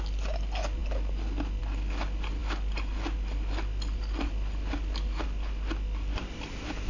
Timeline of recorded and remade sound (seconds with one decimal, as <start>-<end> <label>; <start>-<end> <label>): 0.0-6.9 recorded